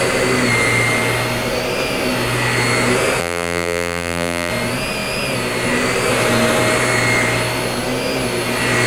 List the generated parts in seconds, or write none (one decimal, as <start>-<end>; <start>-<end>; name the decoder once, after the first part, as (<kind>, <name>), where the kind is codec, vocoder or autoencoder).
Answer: 3.2-4.5 (vocoder, BigVGAN v2)